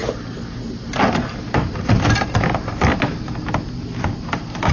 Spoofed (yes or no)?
no